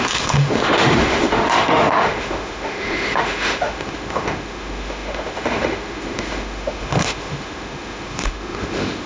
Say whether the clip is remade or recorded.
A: remade